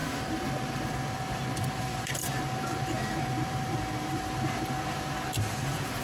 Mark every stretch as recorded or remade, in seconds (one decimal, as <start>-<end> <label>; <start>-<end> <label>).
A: 0.0-6.0 remade